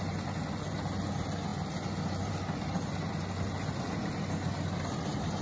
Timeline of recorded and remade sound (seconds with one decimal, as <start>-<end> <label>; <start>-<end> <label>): 0.0-5.4 recorded